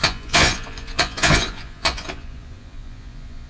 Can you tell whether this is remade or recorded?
remade